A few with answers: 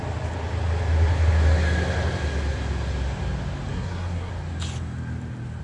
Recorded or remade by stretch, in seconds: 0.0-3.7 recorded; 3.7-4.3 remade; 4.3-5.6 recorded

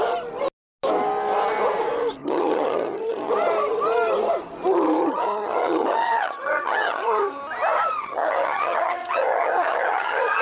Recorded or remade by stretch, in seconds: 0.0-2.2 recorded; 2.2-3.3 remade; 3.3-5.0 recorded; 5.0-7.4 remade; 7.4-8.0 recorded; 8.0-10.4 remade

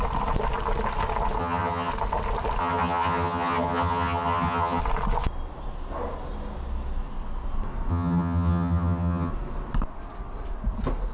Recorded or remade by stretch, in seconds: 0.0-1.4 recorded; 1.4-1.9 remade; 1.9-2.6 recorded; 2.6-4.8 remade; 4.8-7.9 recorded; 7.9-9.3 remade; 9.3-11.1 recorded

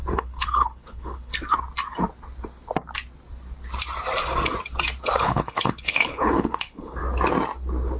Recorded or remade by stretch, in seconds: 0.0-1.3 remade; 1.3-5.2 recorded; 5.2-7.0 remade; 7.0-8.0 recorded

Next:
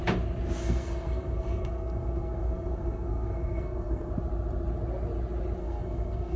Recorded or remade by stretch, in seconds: 0.0-0.6 recorded; 0.6-4.1 remade; 4.1-5.6 recorded; 5.6-6.4 remade